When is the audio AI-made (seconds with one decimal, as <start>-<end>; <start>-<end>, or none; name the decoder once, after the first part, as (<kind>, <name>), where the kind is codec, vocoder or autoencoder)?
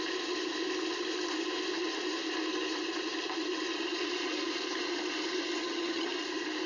5.6-6.1 (vocoder, HiFi-GAN)